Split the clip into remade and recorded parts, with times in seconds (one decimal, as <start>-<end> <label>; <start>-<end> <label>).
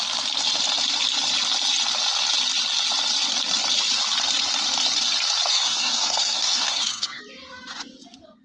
0.0-5.5 recorded; 5.5-7.2 remade; 7.2-8.4 recorded